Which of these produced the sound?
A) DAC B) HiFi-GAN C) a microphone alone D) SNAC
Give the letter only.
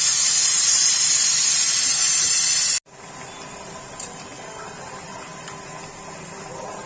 C